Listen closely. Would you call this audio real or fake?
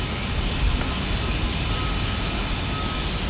real